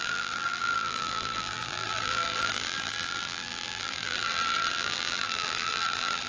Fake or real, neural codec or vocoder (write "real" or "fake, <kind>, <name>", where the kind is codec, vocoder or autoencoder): fake, vocoder, BigVGAN v2